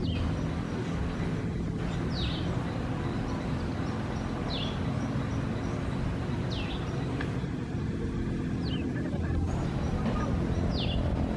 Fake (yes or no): no